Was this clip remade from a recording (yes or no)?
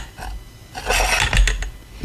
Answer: no